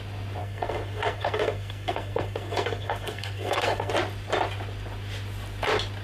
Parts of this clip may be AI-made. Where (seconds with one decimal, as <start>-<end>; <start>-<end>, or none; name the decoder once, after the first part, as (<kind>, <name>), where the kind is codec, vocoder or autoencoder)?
0.4-3.9 (codec, SNAC)